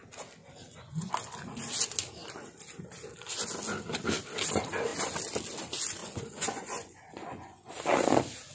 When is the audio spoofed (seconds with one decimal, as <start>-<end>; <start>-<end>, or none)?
0.4-1.1; 6.0-7.7